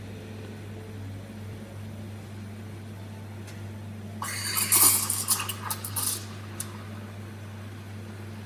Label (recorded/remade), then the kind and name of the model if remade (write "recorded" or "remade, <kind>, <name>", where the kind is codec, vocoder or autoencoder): recorded